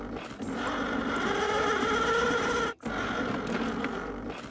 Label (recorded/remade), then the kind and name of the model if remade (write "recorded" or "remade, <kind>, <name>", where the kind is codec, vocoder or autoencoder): recorded